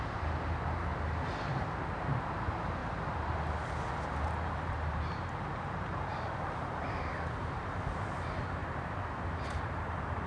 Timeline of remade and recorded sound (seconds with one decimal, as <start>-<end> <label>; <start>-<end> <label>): 0.0-2.8 remade; 2.8-4.7 recorded; 4.7-10.3 remade